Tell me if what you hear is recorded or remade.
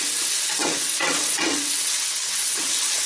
remade